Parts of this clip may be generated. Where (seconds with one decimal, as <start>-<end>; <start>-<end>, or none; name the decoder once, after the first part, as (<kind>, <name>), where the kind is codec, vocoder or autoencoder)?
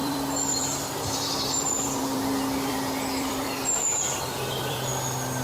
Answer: 0.0-4.9 (vocoder, BigVGAN v2)